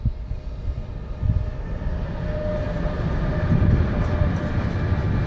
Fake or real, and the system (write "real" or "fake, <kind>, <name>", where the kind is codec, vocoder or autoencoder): real